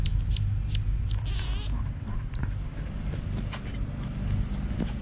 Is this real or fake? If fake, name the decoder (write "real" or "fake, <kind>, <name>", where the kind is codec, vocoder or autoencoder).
real